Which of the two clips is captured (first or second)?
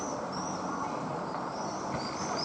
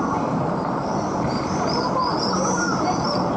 first